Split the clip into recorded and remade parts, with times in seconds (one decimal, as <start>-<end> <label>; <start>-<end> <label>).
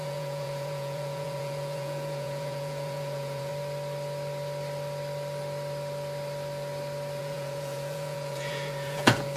0.0-3.5 remade; 3.5-7.2 recorded; 7.2-9.4 remade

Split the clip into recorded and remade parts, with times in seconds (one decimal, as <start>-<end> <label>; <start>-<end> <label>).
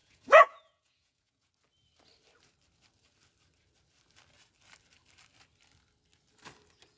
0.0-1.5 remade; 1.5-7.0 recorded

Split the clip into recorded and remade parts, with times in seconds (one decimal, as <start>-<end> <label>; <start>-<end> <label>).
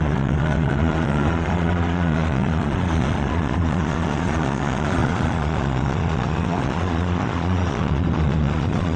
0.0-9.0 remade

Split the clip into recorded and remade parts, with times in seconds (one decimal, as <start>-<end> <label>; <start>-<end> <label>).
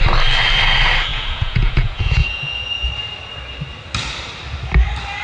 0.0-1.1 recorded; 1.1-2.9 remade; 2.9-5.2 recorded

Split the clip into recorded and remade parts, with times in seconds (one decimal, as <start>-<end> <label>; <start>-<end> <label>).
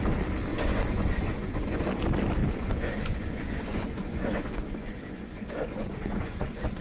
0.0-0.5 recorded; 0.5-1.8 remade; 1.8-2.4 recorded; 2.4-6.8 remade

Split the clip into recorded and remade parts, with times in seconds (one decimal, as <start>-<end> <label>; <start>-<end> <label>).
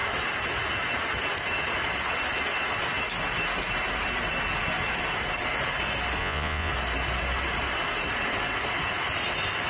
0.0-6.2 recorded; 6.2-6.7 remade; 6.7-9.7 recorded